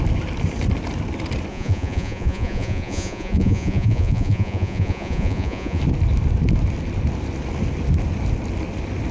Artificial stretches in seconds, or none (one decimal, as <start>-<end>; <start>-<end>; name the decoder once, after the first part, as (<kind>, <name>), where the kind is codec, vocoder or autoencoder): 1.5-5.8 (vocoder, Vocos)